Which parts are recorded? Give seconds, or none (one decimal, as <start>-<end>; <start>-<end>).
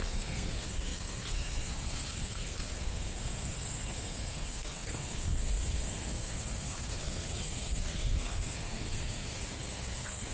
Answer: none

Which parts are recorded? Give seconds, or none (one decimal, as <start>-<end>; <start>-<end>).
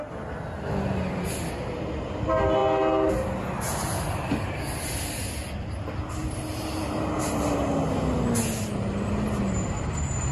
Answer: 0.0-10.3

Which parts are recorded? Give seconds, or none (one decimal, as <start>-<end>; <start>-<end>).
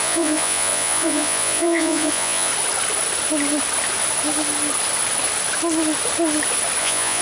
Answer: 2.5-6.8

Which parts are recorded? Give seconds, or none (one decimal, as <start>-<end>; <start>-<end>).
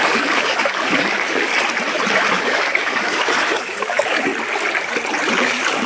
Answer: 1.5-2.3; 4.3-5.3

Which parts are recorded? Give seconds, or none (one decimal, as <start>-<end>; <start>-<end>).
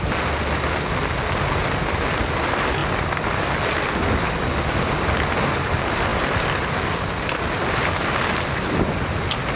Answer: 0.0-9.6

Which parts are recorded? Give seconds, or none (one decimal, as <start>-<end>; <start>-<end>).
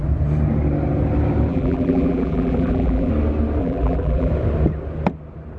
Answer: 0.0-1.5; 3.1-3.6; 4.3-5.6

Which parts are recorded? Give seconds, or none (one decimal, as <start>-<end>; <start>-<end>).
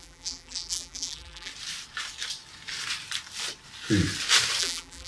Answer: 1.5-4.6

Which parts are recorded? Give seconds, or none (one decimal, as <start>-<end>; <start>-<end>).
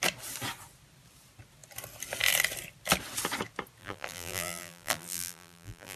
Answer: 0.0-3.8